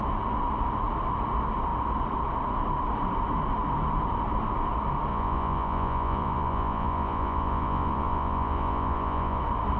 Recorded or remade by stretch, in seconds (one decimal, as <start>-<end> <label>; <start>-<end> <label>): 0.0-5.1 recorded; 5.1-9.4 remade; 9.4-9.8 recorded